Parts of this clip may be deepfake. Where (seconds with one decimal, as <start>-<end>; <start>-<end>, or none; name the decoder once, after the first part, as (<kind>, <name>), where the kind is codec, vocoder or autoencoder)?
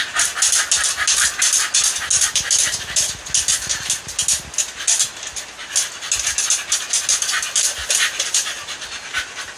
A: 7.8-9.6 (vocoder, BigVGAN v2)